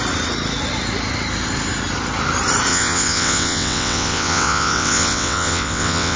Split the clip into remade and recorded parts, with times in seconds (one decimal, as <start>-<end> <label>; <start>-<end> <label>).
0.0-2.7 recorded; 2.7-6.2 remade